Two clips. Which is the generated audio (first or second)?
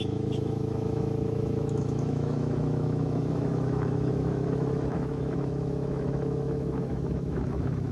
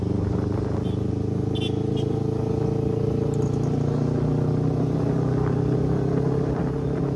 first